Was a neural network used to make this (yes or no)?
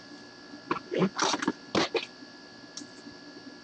no